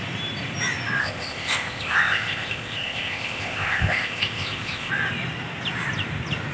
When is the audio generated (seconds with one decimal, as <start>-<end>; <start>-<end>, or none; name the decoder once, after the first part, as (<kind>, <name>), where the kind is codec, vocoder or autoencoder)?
1.0-4.9 (codec, ZipCodec)